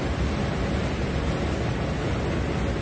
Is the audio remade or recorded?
recorded